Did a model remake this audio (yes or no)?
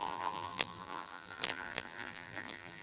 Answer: yes